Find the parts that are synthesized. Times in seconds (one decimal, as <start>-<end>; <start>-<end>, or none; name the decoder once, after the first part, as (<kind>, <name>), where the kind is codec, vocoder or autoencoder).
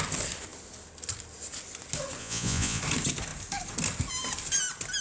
2.2-2.8 (vocoder, Vocos)